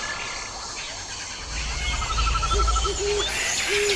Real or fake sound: real